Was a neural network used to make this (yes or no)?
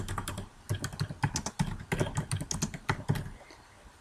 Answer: no